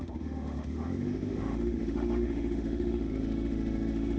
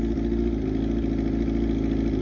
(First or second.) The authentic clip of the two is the second